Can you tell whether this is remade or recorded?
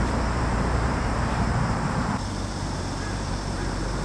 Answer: remade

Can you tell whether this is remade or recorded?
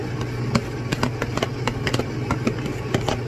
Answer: recorded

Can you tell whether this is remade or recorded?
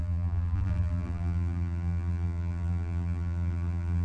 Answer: remade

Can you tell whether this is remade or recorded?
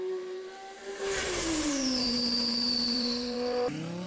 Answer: remade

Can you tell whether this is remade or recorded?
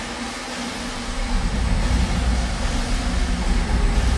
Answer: recorded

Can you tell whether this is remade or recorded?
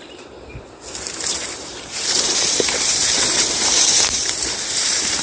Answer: remade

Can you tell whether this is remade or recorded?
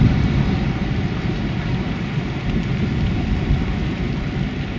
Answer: remade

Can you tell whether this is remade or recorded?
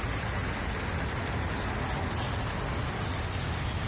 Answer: recorded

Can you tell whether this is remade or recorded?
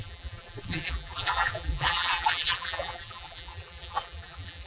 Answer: remade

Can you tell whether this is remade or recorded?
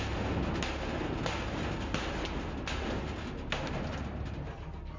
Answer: recorded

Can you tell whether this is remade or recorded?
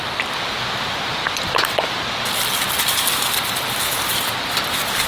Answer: remade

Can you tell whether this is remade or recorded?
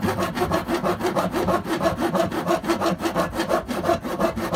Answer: recorded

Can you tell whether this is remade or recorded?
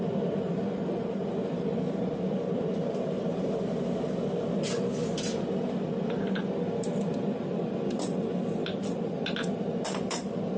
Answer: remade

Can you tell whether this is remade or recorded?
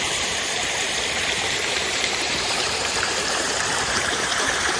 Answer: remade